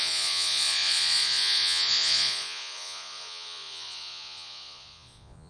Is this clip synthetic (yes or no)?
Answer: yes